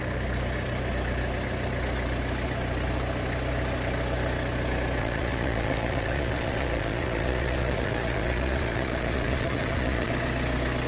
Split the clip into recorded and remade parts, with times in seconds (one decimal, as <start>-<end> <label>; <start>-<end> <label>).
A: 0.0-5.0 recorded; 5.0-10.1 remade; 10.1-10.9 recorded